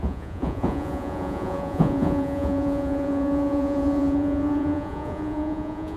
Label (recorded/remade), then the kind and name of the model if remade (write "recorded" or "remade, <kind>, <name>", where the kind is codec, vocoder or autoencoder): remade, vocoder, Vocos